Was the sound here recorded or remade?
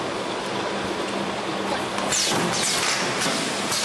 recorded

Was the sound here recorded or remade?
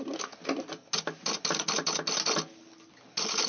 recorded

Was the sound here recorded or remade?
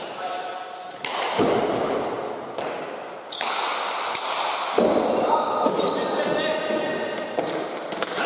recorded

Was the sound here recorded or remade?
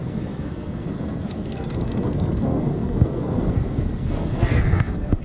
remade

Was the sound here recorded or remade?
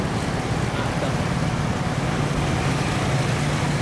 recorded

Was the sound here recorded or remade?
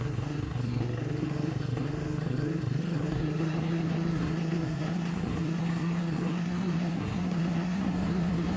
remade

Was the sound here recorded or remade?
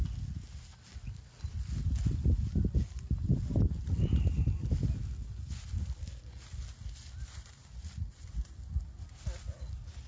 recorded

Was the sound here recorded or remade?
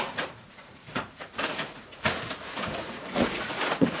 remade